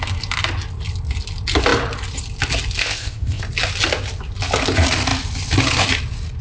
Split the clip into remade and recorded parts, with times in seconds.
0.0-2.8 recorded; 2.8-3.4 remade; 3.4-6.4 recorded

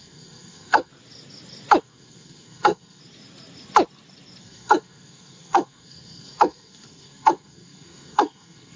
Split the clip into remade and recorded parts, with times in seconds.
0.0-0.9 remade; 0.9-1.8 recorded; 1.8-3.0 remade; 3.0-4.4 recorded; 4.4-8.8 remade

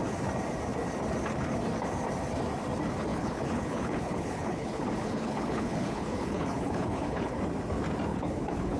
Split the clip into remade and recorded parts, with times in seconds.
0.0-3.1 recorded; 3.1-7.4 remade; 7.4-8.1 recorded; 8.1-8.8 remade